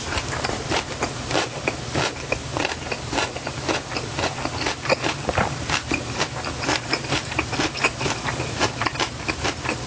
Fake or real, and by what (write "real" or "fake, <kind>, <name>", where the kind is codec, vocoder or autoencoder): fake, vocoder, BigVGAN v2